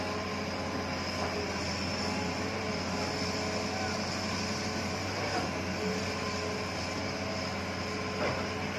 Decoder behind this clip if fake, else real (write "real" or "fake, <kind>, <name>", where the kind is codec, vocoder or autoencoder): real